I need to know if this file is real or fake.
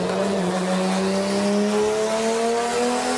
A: real